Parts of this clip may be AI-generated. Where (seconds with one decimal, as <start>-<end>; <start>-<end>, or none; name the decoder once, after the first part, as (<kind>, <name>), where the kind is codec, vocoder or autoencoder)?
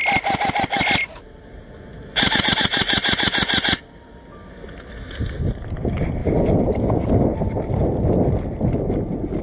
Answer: none